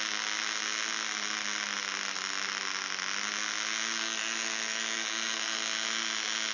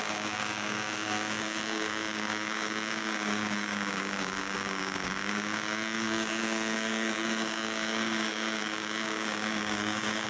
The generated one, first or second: second